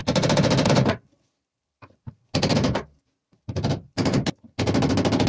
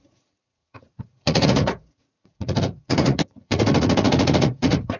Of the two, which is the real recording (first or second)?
first